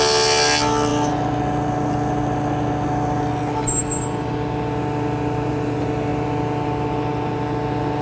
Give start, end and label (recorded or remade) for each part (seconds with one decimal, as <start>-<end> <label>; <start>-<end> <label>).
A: 0.0-8.0 recorded